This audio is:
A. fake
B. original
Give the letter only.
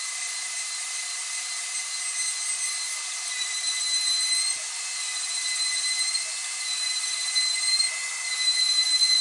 A